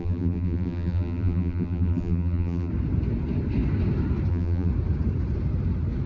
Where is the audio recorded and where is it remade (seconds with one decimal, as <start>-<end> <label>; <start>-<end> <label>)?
0.0-2.7 remade; 2.7-4.3 recorded; 4.3-4.7 remade; 4.7-6.1 recorded

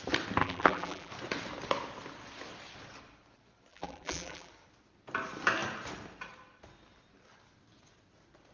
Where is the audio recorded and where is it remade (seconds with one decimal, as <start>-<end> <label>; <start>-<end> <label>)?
0.0-0.4 recorded; 0.4-1.1 remade; 1.1-3.7 recorded; 3.7-4.5 remade; 4.5-8.5 recorded